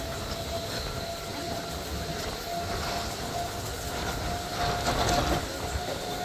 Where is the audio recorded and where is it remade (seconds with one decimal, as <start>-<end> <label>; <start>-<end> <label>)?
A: 0.0-6.2 recorded